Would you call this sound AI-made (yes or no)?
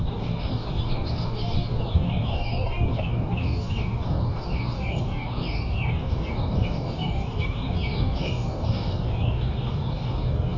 yes